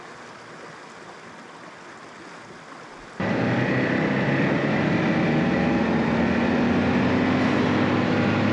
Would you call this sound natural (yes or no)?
yes